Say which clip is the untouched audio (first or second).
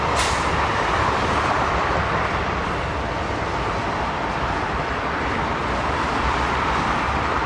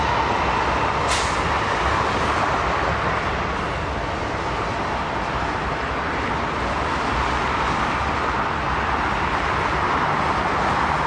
second